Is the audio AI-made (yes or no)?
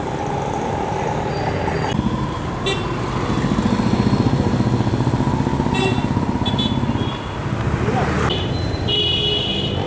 no